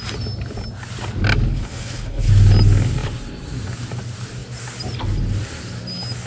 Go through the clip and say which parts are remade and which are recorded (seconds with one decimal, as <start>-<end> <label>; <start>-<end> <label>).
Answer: 0.0-1.5 recorded; 1.5-2.3 remade; 2.3-6.3 recorded